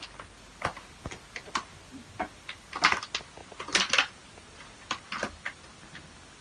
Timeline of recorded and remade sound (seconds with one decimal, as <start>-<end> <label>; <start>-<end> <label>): 0.0-6.4 recorded